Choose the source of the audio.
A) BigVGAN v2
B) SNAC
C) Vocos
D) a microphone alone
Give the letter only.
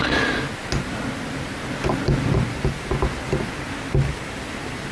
D